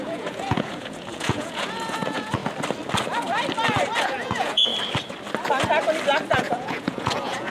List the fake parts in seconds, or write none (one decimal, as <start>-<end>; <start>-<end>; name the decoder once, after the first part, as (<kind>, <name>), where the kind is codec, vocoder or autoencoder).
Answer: 0.0-2.4 (vocoder, Vocos); 4.0-4.7; 6.3-7.5